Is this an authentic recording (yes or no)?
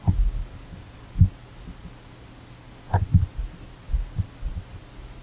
yes